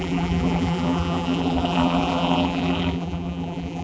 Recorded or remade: remade